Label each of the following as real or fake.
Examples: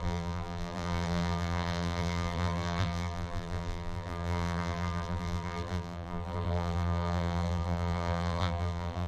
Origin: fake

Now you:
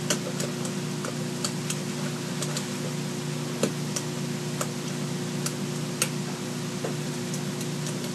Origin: real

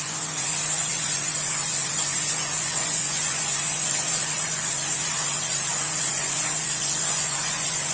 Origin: fake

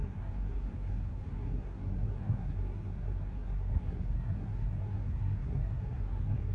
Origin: fake